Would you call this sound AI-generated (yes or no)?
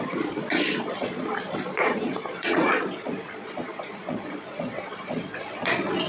yes